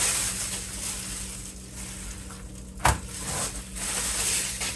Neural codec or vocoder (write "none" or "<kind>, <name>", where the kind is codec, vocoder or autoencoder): none